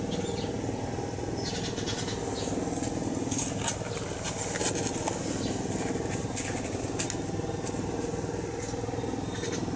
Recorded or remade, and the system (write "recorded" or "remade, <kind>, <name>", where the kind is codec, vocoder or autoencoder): recorded